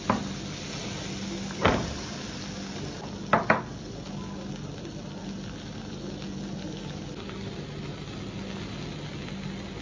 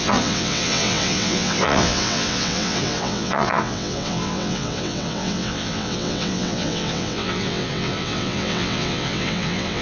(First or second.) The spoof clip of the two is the second